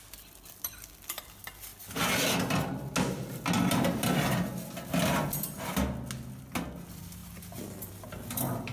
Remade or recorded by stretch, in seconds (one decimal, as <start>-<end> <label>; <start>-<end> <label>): 0.0-8.7 recorded